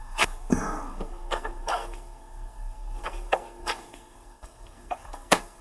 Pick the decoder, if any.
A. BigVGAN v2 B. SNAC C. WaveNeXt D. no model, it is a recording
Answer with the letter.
B